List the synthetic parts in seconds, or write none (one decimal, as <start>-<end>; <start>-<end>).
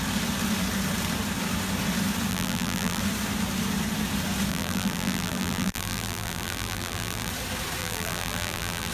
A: 2.3-3.0; 4.5-7.3; 7.8-8.9